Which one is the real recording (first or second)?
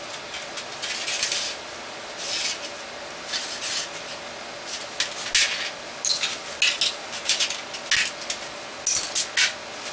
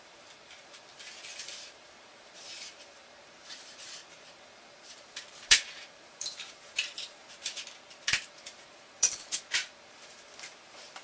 first